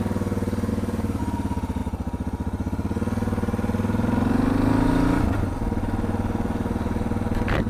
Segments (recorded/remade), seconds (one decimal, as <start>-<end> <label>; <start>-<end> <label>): 0.0-0.7 recorded; 0.7-1.2 remade; 1.2-7.7 recorded